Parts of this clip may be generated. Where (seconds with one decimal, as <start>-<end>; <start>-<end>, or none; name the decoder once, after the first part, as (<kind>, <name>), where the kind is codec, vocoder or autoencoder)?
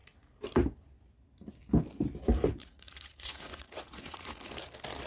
2.6-4.5 (vocoder, Vocos)